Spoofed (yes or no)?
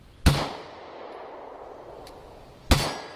no